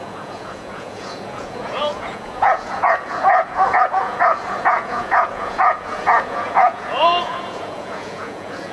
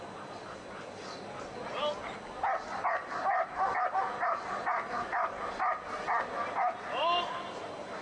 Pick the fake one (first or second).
first